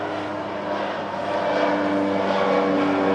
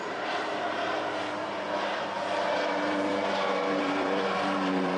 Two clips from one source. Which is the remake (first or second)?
second